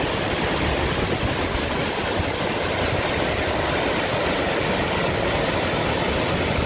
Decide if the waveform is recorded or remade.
recorded